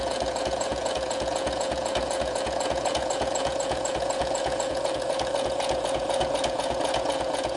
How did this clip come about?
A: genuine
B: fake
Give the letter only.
B